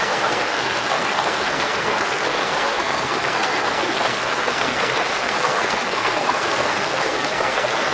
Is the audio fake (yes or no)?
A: yes